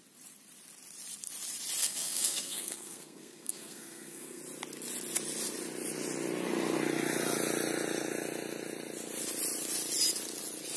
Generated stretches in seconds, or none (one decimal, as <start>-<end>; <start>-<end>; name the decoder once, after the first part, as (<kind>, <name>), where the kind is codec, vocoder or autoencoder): 1.8-4.4 (codec, SNAC)